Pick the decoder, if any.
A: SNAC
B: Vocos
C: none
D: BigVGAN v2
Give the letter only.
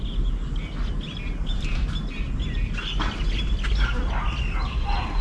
C